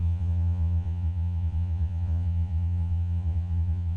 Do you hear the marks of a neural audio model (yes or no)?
yes